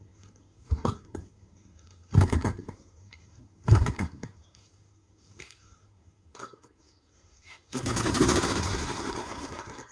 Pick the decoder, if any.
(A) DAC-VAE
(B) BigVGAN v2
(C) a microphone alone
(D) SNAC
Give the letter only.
D